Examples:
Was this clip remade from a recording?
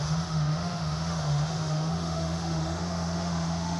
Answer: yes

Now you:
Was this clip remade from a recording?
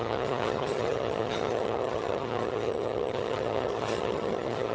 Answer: yes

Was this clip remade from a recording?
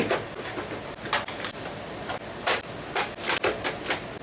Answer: no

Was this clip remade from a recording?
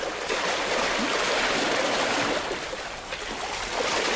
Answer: no